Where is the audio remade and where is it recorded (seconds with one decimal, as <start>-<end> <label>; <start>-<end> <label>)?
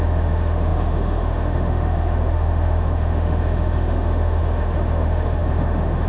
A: 0.0-6.1 remade